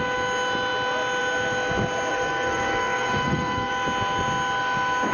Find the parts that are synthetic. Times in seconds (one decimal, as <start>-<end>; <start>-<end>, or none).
2.1-3.7